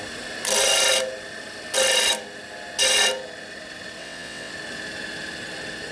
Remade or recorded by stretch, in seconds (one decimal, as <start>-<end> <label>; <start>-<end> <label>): 0.0-4.0 recorded; 4.0-4.5 remade; 4.5-5.9 recorded